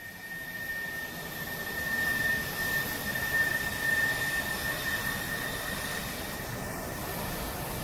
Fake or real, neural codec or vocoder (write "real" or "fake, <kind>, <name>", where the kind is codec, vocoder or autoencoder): fake, vocoder, BigVGAN v2